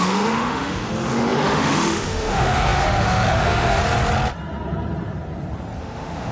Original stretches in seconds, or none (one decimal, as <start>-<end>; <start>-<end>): 3.8-5.8